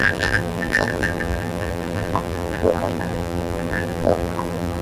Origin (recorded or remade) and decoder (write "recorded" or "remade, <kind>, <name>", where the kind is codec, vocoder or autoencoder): remade, vocoder, BigVGAN v2